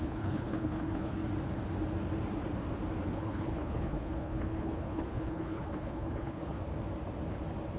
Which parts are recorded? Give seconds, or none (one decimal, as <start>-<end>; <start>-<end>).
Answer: 1.2-3.1; 6.6-7.8

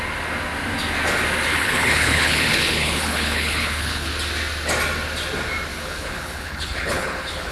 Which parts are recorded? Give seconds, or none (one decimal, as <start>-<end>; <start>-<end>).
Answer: 0.0-1.5; 4.1-5.7

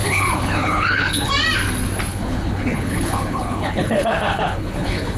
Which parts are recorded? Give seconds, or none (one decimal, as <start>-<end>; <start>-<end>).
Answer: 1.3-2.1

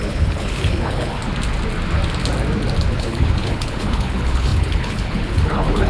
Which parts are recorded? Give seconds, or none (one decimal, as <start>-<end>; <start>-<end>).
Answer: 1.2-2.9

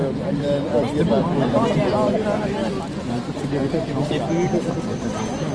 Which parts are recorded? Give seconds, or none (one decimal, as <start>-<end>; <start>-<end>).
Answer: 0.0-5.5